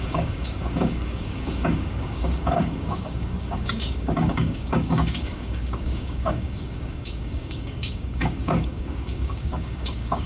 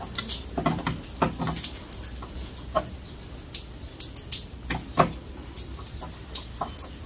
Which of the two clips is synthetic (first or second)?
first